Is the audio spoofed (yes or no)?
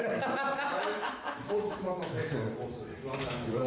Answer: yes